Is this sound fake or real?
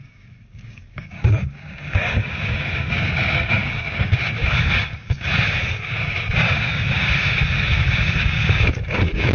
fake